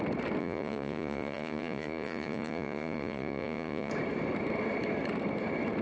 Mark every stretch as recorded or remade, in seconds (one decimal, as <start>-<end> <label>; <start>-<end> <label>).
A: 0.0-0.4 recorded; 0.4-3.9 remade; 3.9-5.8 recorded